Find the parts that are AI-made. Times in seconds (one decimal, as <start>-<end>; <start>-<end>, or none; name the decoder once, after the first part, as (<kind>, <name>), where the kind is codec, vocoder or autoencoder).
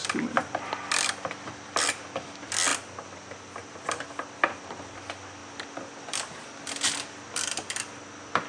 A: none